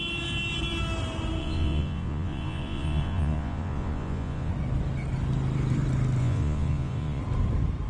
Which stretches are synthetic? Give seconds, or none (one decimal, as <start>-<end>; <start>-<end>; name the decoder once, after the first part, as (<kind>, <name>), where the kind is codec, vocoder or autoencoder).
1.4-4.5 (vocoder, Vocos); 6.2-7.2